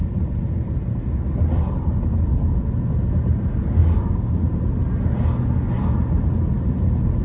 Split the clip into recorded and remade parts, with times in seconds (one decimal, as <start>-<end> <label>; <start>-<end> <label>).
0.0-3.8 recorded; 3.8-4.3 remade; 4.3-7.2 recorded